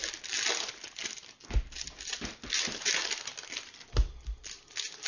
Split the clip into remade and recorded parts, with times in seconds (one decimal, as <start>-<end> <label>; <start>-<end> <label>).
0.0-5.1 recorded